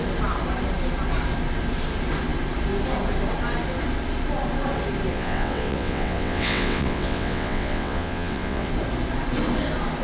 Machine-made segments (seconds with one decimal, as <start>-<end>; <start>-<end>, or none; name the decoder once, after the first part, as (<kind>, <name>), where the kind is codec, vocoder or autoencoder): 5.1-8.7 (vocoder, WaveNeXt)